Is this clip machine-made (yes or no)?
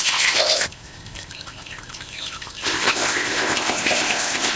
yes